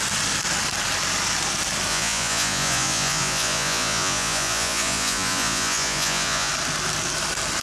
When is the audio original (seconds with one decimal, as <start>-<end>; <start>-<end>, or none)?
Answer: 0.0-1.9; 6.5-7.6